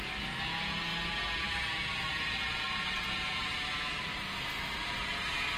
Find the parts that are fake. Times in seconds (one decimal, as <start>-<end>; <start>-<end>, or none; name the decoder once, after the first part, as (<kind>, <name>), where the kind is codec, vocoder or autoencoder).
2.1-3.4 (vocoder, Vocos)